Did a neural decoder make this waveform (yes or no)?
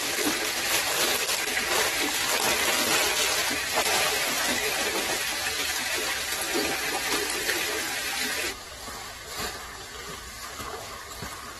no